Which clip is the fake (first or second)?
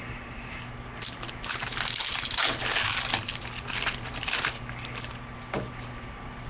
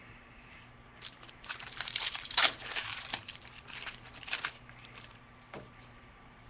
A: second